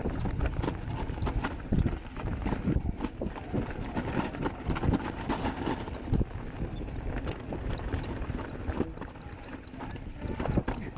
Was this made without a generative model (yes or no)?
yes